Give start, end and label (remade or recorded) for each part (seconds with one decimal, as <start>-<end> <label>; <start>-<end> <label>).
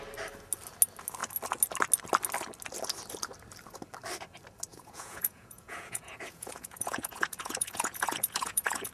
0.0-4.7 recorded; 4.7-8.9 remade